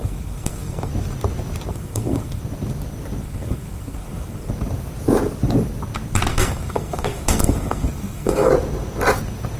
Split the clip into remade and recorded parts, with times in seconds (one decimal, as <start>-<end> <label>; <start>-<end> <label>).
0.0-0.9 remade; 0.9-1.7 recorded; 1.7-2.4 remade; 2.4-3.2 recorded; 3.2-4.5 remade; 4.5-6.3 recorded; 6.3-8.5 remade; 8.5-9.6 recorded